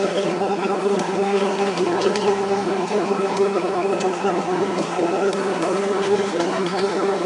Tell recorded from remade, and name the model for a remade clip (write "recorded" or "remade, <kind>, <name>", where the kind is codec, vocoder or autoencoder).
remade, codec, SNAC